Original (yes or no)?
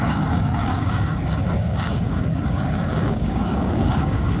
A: no